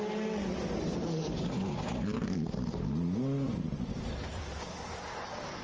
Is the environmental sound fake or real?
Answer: real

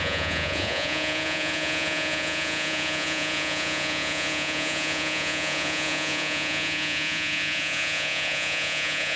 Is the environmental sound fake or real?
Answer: fake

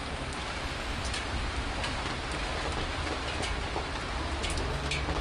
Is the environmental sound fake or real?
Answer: real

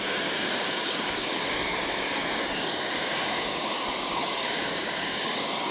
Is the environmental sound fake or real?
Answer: fake